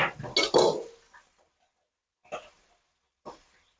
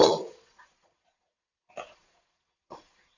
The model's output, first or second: second